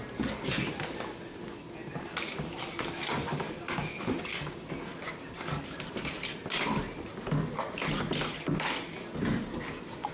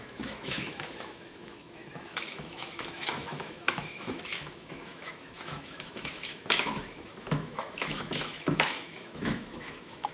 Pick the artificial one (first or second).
second